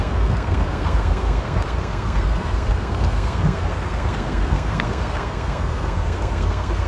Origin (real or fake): fake